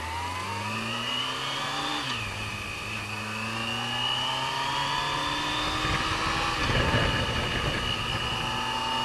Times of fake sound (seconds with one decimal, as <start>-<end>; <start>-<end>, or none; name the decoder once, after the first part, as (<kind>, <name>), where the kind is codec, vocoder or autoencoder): none